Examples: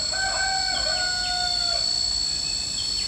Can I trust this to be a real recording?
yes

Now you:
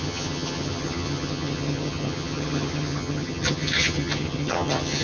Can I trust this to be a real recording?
no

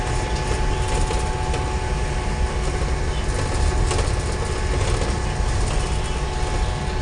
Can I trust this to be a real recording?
yes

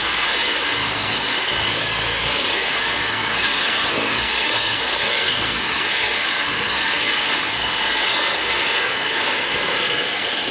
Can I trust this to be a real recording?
no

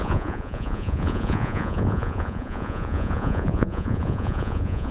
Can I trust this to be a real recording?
no